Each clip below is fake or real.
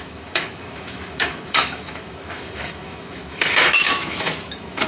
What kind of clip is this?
fake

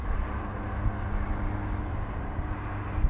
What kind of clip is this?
real